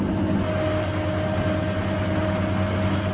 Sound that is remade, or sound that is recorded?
recorded